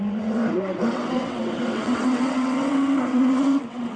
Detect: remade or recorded remade